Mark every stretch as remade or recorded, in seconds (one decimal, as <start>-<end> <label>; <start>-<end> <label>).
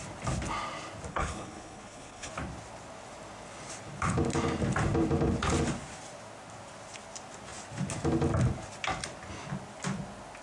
0.0-1.1 recorded; 1.1-2.3 remade; 2.3-10.4 recorded